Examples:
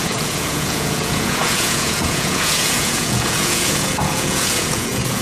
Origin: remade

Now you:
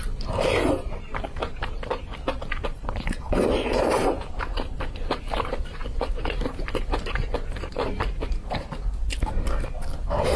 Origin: remade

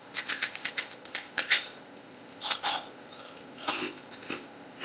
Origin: remade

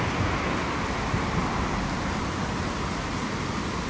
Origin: recorded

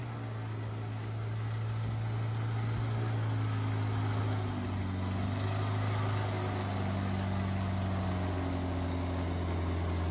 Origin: recorded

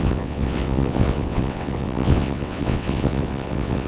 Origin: remade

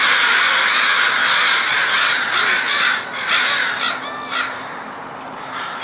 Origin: recorded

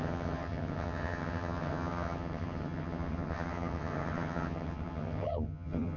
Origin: remade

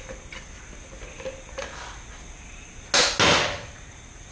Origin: recorded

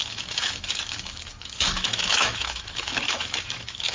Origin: remade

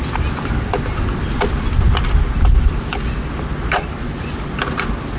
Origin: recorded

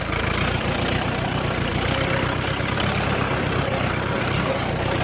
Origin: remade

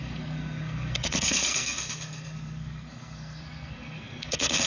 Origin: remade